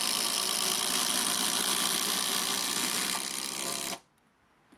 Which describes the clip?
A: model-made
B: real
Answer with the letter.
A